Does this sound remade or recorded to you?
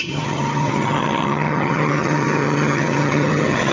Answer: remade